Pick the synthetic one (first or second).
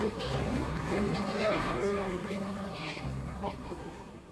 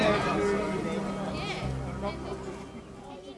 first